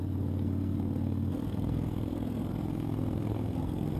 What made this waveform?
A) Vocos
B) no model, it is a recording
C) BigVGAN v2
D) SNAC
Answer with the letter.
D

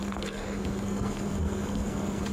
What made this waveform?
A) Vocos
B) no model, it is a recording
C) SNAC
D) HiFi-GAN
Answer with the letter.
C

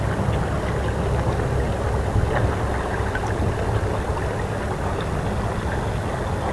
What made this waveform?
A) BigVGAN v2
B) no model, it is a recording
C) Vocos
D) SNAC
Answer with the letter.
B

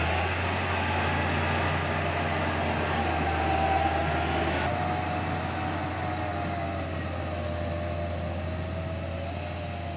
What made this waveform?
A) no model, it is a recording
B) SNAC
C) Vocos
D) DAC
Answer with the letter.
A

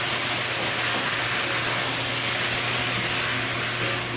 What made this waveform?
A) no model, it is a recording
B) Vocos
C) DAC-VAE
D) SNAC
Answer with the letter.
A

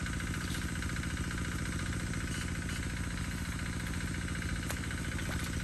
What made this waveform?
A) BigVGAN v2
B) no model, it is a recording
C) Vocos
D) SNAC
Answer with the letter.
B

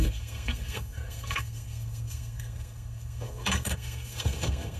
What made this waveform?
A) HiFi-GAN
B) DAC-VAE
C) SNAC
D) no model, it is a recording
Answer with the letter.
C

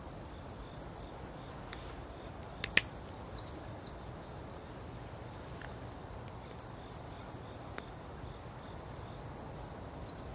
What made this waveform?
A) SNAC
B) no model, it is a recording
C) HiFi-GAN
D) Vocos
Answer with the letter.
B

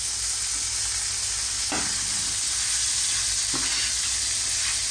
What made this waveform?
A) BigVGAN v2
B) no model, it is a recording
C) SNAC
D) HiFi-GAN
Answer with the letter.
B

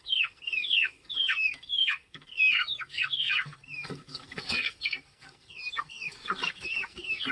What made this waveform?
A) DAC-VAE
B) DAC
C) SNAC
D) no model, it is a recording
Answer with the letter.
C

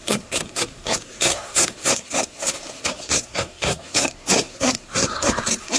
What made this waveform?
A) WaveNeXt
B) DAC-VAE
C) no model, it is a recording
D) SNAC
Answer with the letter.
D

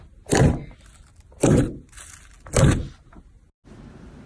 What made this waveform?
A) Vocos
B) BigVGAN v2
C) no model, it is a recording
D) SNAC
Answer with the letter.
C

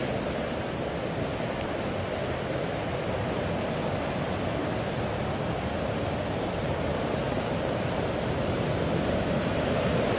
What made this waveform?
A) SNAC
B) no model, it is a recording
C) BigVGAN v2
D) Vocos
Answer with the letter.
B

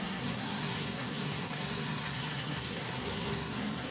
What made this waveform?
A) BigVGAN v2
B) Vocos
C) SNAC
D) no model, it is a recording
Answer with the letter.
C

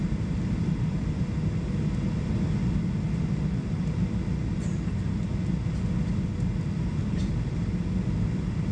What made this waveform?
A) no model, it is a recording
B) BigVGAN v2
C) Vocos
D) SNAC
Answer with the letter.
A